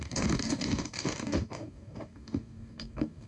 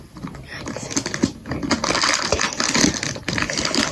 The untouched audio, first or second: second